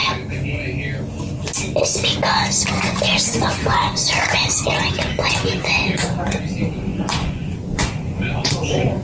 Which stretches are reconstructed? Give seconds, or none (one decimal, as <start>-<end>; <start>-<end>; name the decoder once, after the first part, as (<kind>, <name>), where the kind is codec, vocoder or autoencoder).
2.7-9.0 (vocoder, Vocos)